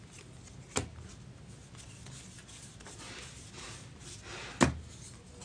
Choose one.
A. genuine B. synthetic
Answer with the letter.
A